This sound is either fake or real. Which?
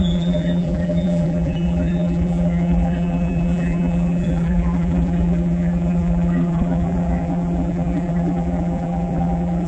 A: fake